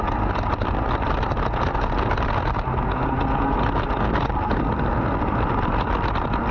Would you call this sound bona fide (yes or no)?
yes